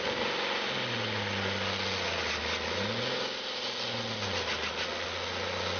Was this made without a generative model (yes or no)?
yes